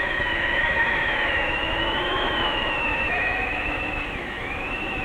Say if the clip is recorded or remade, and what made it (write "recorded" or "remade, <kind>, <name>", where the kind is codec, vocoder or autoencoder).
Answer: remade, autoencoder, DAC-VAE